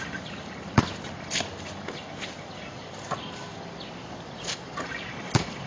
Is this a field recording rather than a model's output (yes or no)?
yes